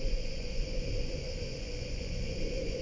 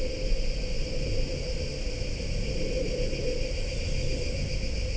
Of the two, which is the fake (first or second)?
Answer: first